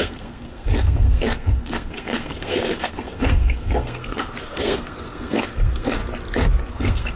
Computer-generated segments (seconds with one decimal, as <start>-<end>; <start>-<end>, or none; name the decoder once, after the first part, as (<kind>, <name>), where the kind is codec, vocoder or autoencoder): 0.0-6.0 (codec, SNAC); 6.7-7.2